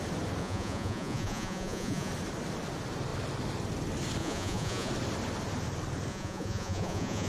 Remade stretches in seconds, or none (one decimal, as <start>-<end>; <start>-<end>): 0.4-2.1; 4.2-4.9; 6.1-7.3